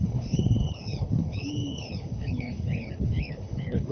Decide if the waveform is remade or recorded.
remade